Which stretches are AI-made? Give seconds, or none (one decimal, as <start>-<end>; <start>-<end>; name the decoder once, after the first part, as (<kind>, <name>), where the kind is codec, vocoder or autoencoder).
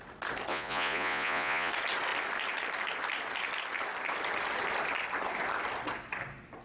0.5-1.7 (vocoder, Vocos)